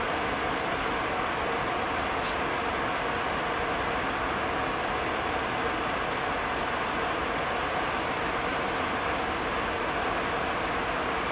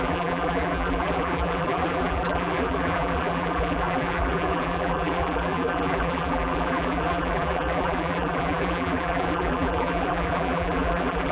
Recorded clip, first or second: first